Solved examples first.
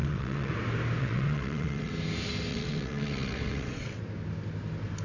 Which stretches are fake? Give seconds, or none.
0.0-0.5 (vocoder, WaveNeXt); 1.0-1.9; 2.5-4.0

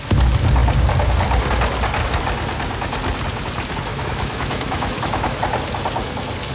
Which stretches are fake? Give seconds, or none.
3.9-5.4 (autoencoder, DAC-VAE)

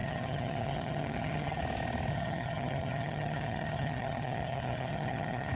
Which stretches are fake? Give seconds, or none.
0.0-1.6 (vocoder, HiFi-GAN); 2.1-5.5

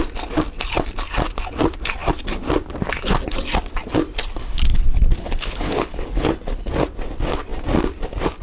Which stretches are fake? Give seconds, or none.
4.4-6.7 (codec, HILCodec)